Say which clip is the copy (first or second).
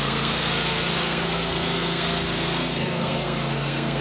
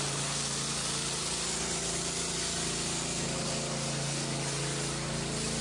first